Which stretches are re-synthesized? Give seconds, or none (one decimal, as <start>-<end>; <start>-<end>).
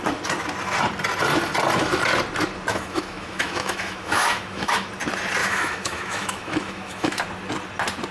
2.7-4.9; 5.4-7.2